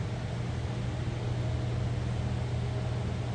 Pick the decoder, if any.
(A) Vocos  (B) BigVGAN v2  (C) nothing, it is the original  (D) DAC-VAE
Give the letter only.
C